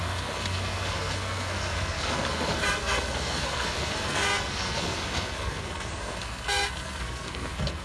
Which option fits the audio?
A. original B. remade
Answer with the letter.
B